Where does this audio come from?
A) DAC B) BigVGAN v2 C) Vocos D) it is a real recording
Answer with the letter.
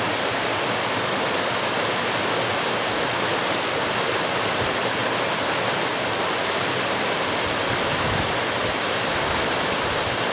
D